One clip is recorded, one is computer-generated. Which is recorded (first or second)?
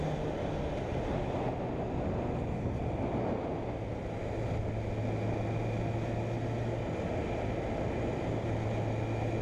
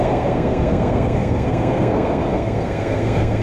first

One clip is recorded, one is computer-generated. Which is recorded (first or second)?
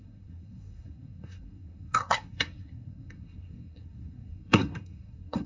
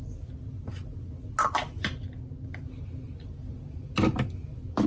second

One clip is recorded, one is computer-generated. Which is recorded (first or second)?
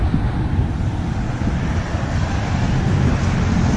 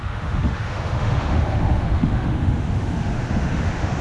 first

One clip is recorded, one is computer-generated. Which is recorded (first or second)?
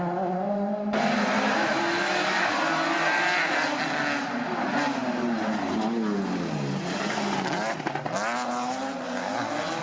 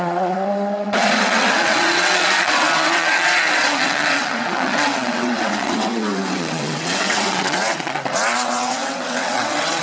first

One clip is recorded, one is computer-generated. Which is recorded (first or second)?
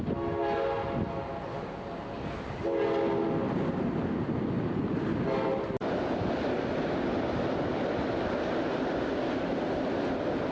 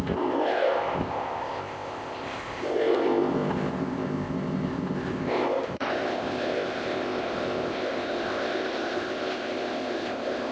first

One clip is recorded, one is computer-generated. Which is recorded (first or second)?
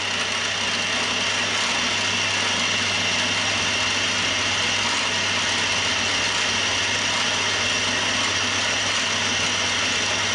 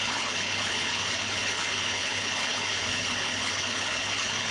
first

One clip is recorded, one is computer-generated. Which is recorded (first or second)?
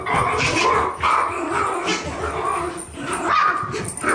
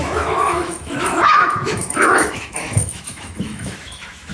first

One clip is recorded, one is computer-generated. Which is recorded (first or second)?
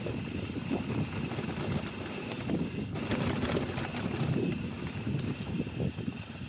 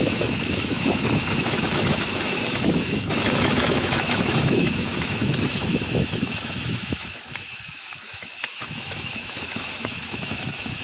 first